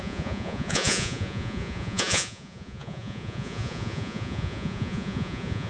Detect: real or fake fake